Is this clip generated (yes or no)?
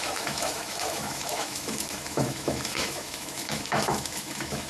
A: yes